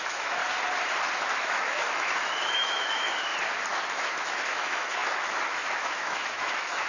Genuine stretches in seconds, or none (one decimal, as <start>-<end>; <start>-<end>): 0.4-1.4; 3.3-3.9